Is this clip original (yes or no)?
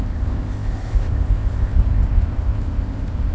no